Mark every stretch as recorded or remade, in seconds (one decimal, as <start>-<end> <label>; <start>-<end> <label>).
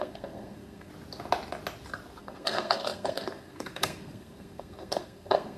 0.0-0.9 remade; 0.9-2.2 recorded; 2.2-5.6 remade